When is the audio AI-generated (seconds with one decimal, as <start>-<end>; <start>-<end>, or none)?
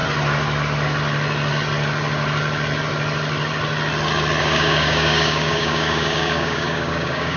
4.4-7.4